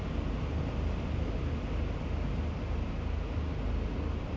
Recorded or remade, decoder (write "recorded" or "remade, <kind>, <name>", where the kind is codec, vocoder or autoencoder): recorded